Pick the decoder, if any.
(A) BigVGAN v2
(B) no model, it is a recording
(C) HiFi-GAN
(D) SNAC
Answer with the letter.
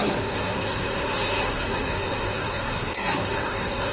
D